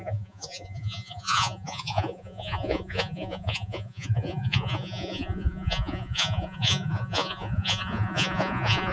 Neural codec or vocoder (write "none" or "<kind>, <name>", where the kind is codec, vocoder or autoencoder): vocoder, Vocos